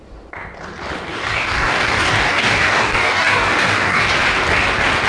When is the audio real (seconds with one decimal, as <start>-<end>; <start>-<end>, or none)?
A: 0.0-1.1; 4.1-5.1